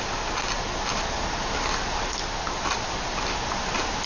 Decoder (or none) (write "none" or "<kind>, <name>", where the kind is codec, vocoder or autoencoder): none